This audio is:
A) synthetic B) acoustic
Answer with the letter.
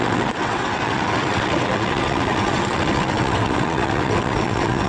A